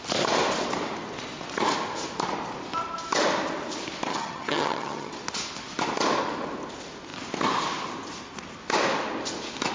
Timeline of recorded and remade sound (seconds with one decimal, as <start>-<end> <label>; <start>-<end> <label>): 0.0-4.1 recorded; 4.1-5.1 remade; 5.1-9.7 recorded